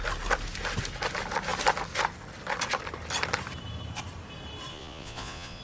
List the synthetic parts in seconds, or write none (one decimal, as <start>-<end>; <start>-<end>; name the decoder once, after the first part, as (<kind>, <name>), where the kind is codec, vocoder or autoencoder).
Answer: 4.7-5.6 (vocoder, Vocos)